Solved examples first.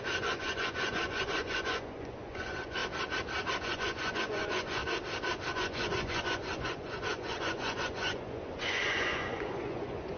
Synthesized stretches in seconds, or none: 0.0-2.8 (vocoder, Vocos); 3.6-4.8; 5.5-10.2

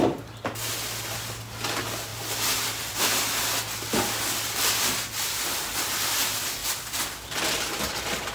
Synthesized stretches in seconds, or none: none

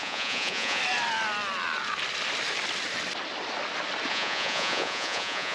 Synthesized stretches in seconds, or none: 0.0-0.8 (vocoder, Vocos); 4.1-5.5